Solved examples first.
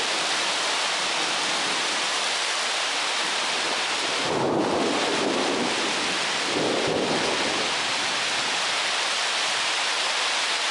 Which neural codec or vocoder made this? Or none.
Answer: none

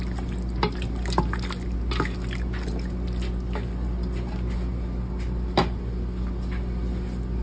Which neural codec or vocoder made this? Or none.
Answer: none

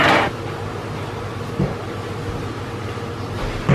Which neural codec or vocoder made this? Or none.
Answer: none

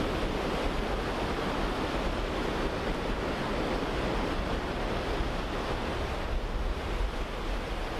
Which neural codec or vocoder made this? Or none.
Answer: none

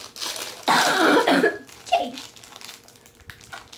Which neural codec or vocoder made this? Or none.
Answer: none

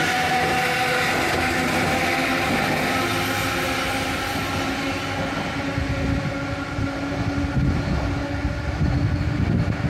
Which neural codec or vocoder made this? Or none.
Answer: none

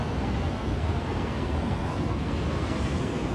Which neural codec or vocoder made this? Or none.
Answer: codec, SNAC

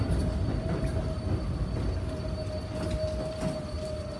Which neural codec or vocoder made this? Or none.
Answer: none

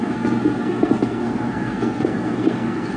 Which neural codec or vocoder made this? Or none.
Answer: codec, SNAC